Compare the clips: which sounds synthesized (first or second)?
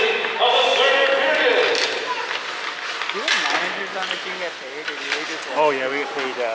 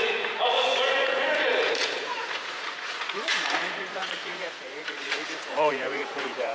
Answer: second